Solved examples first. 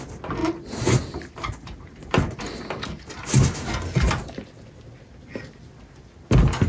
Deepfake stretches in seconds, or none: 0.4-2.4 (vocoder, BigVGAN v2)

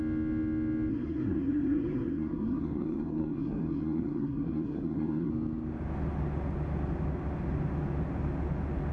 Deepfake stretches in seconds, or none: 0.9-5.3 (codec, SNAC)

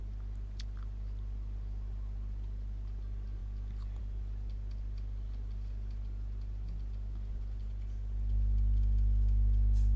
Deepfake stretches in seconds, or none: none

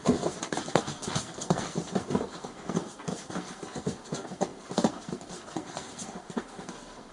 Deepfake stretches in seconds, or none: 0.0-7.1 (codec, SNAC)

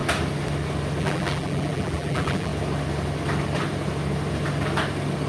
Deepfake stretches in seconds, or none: 1.0-2.5 (vocoder, BigVGAN v2)

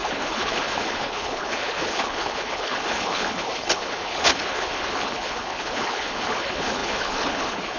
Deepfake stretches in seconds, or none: 0.0-7.8 (codec, HILCodec)

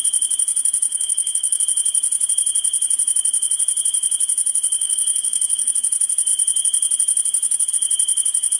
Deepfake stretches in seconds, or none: 0.9-1.6 (codec, SNAC); 4.8-5.7

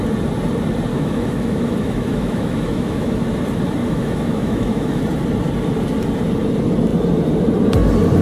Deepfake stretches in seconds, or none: 0.9-3.2 (autoencoder, DAC-VAE); 3.8-5.0